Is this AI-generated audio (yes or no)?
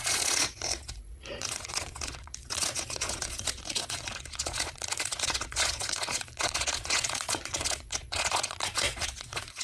yes